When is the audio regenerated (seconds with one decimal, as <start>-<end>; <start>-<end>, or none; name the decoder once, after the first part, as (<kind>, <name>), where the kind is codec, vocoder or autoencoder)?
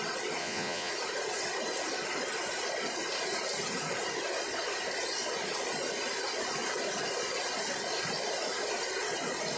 0.4-0.9 (vocoder, Vocos)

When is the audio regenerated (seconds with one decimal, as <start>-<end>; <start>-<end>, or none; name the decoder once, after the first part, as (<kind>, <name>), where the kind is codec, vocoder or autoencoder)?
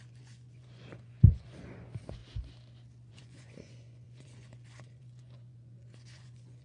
0.0-2.2 (vocoder, Vocos); 3.1-6.6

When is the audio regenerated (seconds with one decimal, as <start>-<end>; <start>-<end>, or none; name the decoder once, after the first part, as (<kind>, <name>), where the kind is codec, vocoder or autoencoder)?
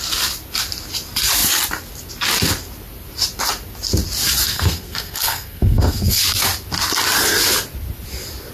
4.5-6.2 (codec, SNAC)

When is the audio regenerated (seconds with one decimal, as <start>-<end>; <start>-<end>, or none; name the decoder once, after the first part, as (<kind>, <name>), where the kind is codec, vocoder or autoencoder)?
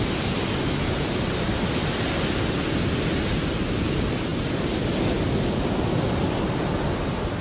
none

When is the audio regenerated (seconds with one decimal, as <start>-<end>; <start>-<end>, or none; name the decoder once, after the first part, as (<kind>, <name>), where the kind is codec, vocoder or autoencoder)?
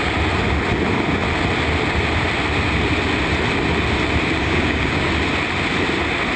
4.4-5.1 (codec, DAC)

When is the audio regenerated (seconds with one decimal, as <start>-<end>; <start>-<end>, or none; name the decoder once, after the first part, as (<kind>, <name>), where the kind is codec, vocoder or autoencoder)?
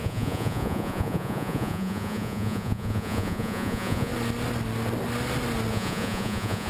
0.0-4.1 (vocoder, Vocos); 5.7-6.7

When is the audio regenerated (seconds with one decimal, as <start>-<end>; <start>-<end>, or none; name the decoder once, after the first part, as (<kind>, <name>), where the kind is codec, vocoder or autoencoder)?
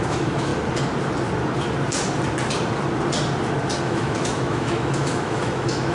0.0-0.5 (autoencoder, DAC-VAE); 3.8-5.9